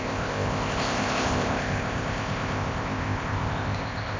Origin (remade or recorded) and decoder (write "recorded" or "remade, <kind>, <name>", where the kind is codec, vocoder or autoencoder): remade, codec, ZipCodec